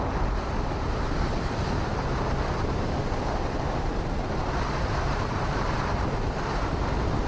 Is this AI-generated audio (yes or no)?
yes